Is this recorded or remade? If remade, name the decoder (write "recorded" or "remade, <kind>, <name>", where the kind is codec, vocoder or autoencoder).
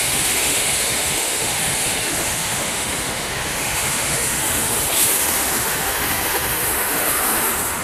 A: remade, autoencoder, DAC-VAE